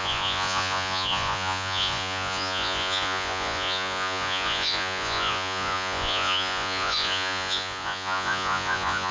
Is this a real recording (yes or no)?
no